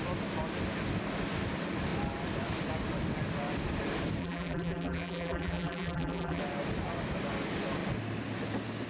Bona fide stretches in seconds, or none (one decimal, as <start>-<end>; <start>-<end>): 0.0-4.2; 6.4-8.9